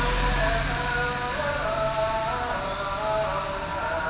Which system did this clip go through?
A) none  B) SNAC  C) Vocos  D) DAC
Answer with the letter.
A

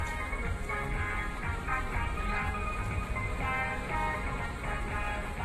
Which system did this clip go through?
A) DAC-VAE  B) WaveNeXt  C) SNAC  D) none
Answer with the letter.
D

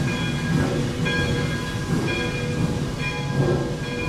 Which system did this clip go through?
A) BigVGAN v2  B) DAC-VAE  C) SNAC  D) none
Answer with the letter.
D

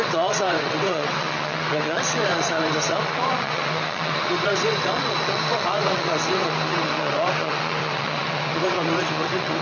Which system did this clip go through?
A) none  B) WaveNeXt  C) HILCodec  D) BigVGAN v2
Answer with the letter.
B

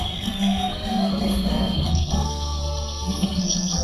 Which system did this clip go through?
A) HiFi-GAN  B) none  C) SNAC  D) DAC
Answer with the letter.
C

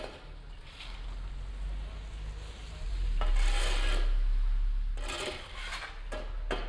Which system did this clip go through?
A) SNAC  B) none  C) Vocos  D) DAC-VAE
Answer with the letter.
B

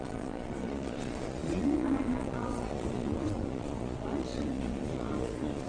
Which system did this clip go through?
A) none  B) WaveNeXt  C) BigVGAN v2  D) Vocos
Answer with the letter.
D